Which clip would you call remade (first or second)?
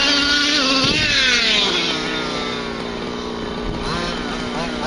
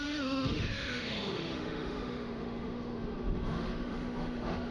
second